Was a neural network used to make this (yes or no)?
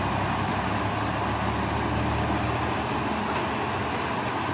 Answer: no